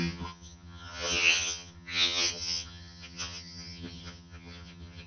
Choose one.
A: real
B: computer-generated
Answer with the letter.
B